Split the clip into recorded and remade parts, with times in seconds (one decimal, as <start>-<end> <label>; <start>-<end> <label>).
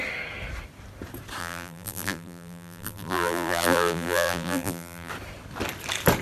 0.0-1.4 recorded; 1.4-5.1 remade; 5.1-6.2 recorded